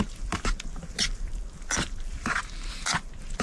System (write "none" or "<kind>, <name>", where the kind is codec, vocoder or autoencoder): vocoder, BigVGAN v2